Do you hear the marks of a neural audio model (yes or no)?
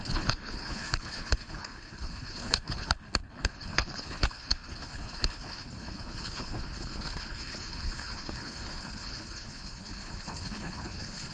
yes